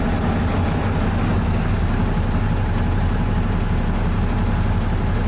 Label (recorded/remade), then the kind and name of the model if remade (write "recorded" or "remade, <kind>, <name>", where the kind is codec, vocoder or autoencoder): recorded